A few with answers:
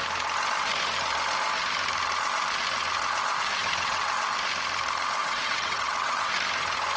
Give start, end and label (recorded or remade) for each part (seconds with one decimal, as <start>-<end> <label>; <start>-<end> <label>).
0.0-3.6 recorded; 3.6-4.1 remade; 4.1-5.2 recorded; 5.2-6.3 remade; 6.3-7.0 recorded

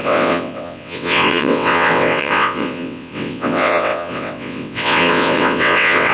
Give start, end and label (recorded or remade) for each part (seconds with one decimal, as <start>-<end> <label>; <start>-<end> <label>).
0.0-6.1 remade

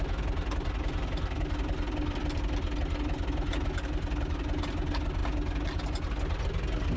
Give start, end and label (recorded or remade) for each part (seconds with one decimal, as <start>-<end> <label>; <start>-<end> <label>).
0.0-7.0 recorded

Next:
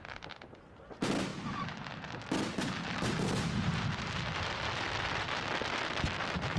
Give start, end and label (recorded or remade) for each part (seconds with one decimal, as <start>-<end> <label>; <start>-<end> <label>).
0.0-6.6 recorded

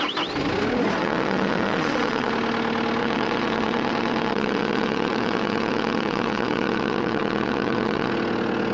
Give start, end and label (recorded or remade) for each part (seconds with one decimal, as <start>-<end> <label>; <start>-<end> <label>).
0.0-1.0 recorded; 1.0-2.3 remade; 2.3-3.0 recorded; 3.0-8.1 remade; 8.1-8.7 recorded

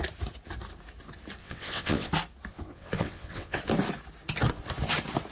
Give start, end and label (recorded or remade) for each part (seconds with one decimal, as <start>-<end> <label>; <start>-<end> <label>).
0.0-1.4 recorded; 1.4-2.1 remade; 2.1-2.5 recorded; 2.5-3.6 remade; 3.6-5.3 recorded

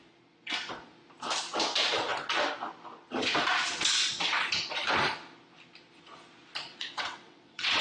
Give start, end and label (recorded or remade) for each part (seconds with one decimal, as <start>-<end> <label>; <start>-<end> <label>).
0.0-6.7 recorded; 6.7-7.8 remade

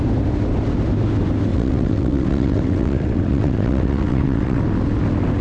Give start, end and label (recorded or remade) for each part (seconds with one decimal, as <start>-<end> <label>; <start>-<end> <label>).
0.0-1.5 recorded; 1.5-4.6 remade; 4.6-5.4 recorded